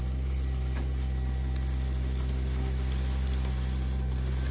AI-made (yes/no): no